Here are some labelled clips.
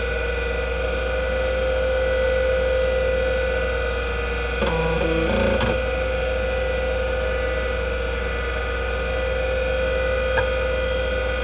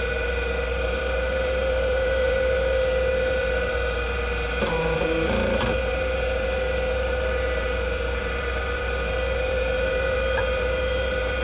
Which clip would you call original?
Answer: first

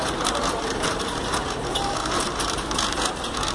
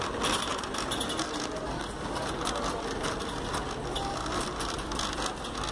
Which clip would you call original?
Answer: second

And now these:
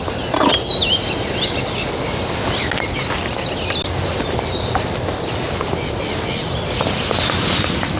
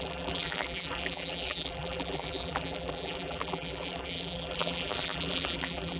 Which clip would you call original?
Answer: first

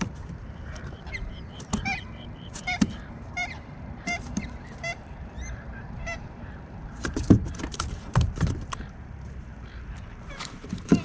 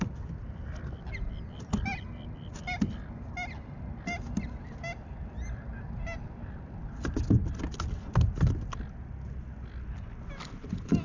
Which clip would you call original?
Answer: second